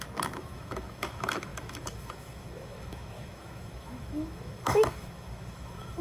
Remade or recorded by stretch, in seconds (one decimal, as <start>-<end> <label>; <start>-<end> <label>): 0.0-6.0 remade